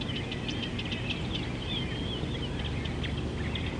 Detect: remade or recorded recorded